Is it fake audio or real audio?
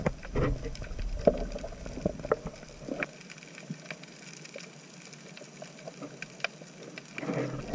real